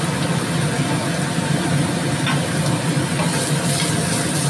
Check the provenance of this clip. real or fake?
real